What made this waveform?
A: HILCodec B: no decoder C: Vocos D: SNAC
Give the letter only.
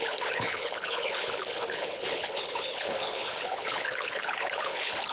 A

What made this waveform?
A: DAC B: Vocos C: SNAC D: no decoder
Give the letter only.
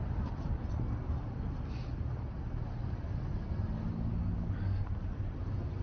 D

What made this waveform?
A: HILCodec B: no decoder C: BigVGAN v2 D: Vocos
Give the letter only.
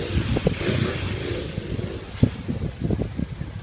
B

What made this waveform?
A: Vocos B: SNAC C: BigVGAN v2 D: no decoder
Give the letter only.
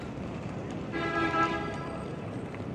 C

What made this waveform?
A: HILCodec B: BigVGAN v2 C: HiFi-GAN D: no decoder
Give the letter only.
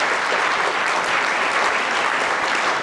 B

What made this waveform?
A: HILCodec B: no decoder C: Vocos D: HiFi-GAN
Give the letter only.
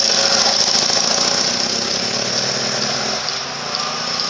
B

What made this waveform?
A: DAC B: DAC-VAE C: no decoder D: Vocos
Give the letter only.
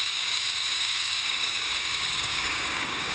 A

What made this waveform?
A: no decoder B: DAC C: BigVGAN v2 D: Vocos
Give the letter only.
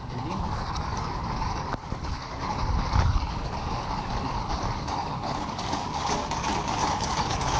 B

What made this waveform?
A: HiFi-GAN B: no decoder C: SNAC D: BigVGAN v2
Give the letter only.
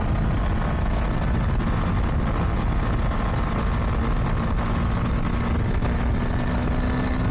B